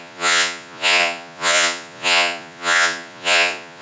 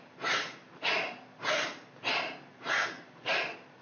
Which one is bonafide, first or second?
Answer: second